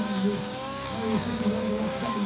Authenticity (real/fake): fake